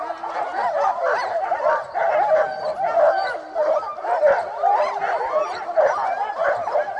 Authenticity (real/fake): real